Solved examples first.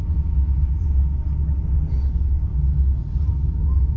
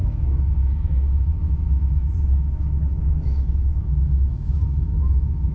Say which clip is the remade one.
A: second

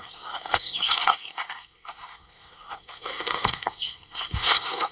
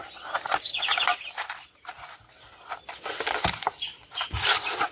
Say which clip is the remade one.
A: first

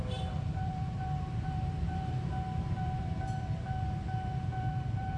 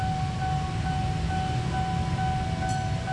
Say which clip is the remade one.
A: first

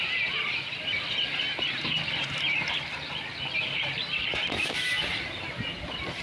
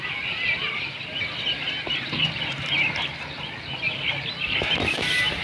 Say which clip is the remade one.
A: first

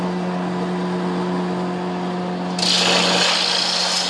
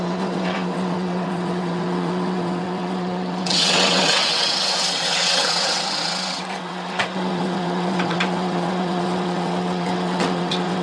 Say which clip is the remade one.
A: second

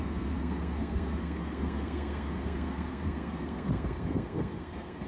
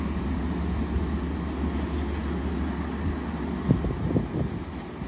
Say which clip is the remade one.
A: first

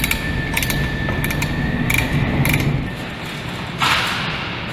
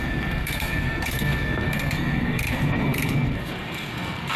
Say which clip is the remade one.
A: second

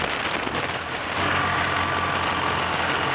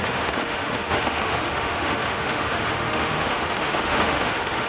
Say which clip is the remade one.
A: second